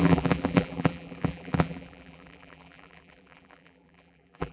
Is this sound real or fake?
fake